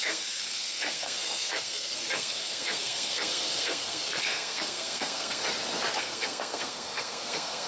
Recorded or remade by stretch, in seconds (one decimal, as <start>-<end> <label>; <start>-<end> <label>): 0.0-5.4 remade; 5.4-6.0 recorded; 6.0-7.7 remade